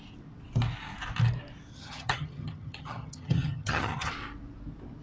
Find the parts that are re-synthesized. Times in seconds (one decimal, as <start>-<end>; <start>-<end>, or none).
1.7-4.1